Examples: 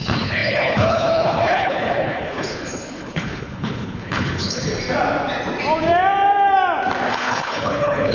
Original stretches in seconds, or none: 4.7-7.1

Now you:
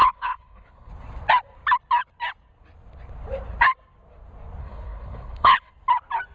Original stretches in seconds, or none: 0.9-4.6; 5.7-6.3

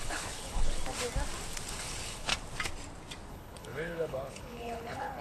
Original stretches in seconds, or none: 0.8-1.7; 2.3-3.3

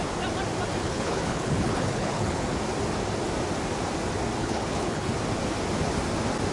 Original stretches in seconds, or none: 0.0-0.8; 2.4-4.4; 5.1-6.5

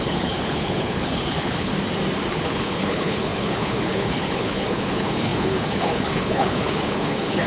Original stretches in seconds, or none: 1.7-2.3

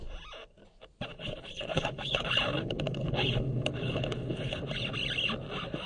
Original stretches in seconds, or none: 0.0-1.1; 4.6-5.9

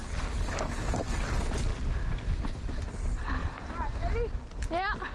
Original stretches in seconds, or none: 0.0-5.1

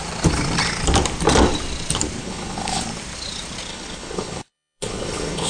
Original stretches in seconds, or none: 0.0-2.2; 2.8-3.7